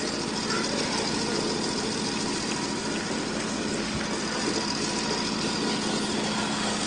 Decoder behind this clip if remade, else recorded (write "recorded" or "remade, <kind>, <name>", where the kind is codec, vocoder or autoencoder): recorded